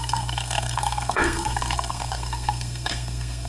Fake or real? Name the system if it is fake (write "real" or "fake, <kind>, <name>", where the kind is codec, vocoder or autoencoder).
fake, codec, SNAC